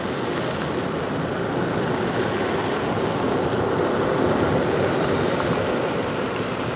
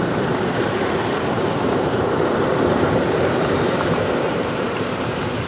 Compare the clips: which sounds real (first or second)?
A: first